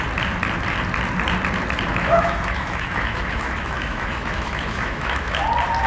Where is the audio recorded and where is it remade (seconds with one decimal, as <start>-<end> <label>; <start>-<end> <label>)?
0.0-1.9 recorded; 1.9-5.4 remade; 5.4-5.9 recorded